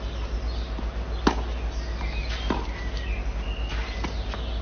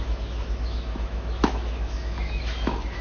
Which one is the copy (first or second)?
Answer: second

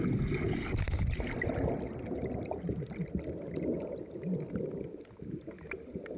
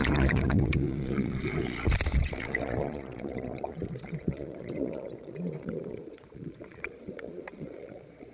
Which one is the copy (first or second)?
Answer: second